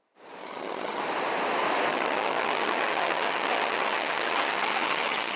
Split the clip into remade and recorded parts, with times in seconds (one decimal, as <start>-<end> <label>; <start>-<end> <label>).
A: 0.0-0.4 recorded; 0.4-1.0 remade; 1.0-1.9 recorded; 1.9-5.4 remade